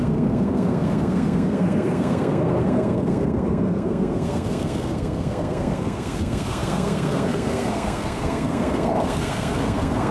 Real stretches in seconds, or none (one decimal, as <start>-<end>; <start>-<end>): none